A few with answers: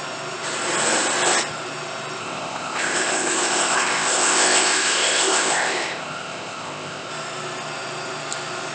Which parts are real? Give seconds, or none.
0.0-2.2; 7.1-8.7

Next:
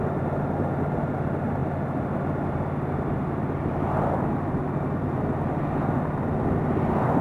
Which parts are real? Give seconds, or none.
0.0-7.2

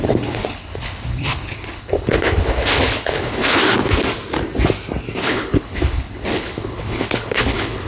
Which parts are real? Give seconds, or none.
3.6-5.2

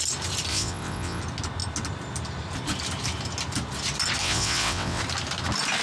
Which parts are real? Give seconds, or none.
0.0-0.5; 1.2-4.2; 5.0-5.8

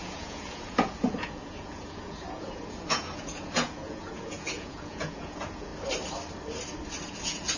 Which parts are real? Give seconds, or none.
5.7-7.1

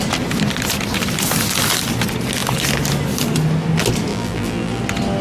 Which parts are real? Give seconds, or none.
0.0-4.1; 4.8-5.2